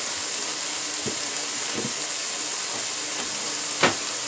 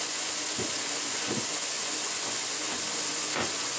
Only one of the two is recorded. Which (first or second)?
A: first